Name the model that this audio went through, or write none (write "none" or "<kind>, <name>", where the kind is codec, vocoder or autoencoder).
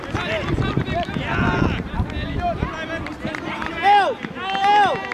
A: none